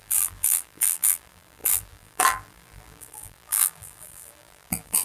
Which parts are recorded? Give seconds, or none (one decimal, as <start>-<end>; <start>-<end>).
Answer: none